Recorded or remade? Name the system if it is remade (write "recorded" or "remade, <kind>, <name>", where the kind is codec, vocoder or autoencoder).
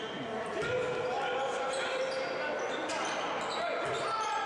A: recorded